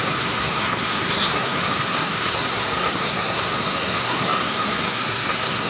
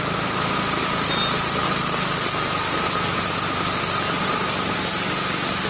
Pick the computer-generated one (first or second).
first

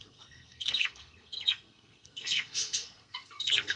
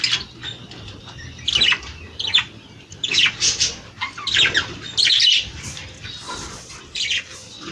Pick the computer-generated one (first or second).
first